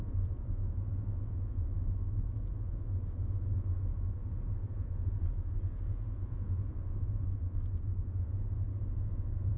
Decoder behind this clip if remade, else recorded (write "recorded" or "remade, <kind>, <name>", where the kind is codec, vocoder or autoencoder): remade, vocoder, Vocos